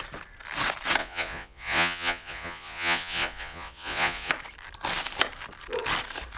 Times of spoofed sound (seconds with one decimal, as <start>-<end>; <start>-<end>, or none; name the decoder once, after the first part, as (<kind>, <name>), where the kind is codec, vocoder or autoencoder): 1.0-4.3 (vocoder, Vocos)